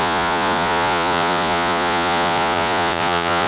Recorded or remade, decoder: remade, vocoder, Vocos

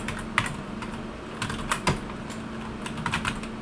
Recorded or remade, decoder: recorded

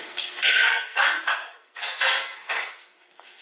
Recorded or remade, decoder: remade, codec, SNAC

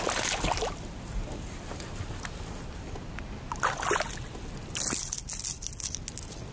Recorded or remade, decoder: recorded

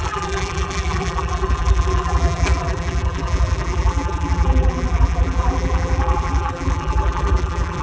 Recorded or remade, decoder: remade, vocoder, BigVGAN v2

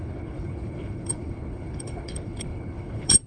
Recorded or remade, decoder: remade, codec, HILCodec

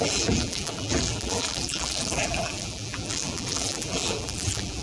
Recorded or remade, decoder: remade, vocoder, BigVGAN v2